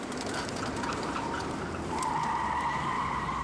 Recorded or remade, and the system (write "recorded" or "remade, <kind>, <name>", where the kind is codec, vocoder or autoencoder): remade, vocoder, BigVGAN v2